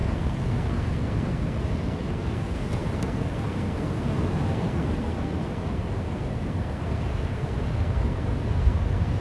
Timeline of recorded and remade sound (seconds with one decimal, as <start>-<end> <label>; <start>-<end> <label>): 0.0-9.2 remade